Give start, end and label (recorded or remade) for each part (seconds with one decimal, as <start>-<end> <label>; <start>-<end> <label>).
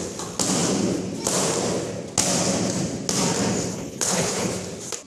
0.0-3.7 recorded; 3.7-4.5 remade; 4.5-5.1 recorded